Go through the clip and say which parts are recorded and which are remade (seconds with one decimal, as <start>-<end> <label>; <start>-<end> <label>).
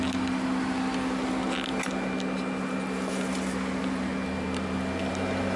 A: 0.0-5.6 recorded